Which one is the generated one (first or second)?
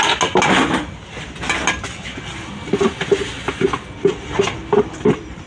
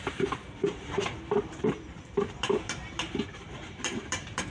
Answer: second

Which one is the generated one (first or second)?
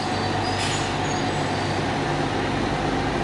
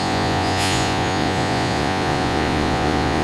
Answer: second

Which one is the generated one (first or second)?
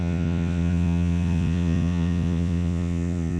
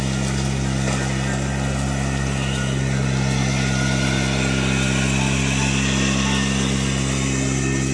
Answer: first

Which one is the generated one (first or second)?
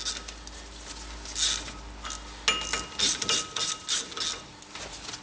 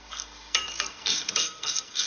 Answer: second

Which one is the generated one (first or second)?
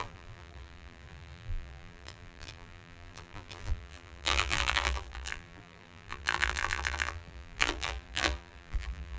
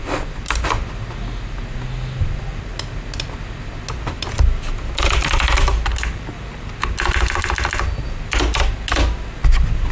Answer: first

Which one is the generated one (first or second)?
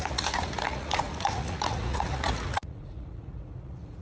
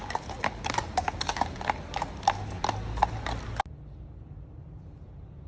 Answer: first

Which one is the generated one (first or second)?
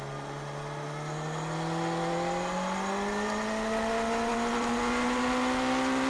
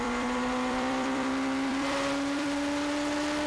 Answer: second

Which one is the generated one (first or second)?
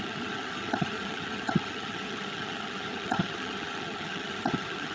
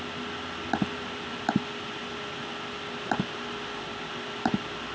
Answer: first